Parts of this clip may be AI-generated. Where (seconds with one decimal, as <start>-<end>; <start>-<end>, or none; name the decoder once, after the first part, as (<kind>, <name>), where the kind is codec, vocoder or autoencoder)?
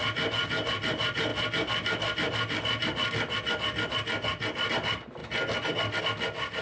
none